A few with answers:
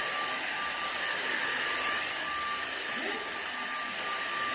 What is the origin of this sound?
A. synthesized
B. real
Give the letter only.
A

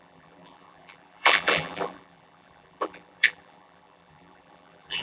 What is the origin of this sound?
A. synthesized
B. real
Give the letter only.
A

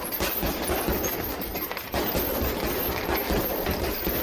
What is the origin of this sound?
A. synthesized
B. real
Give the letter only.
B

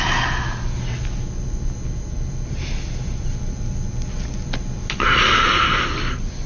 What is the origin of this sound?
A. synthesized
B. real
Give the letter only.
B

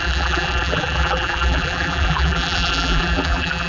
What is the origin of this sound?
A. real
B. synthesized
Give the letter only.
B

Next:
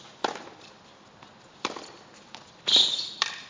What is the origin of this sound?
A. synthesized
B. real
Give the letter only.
A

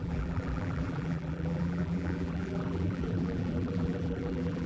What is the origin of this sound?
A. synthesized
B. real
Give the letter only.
A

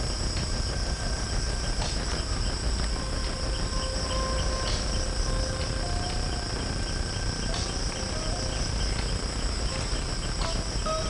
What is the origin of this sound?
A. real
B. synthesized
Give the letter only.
A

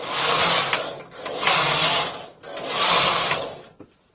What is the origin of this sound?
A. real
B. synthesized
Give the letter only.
A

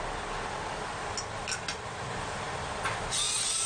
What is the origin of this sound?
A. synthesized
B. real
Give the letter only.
B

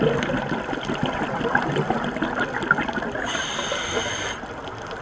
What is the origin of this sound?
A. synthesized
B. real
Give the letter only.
B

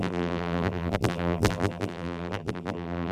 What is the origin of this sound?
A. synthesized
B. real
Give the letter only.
A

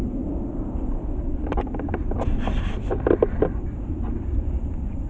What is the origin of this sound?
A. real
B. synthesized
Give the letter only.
A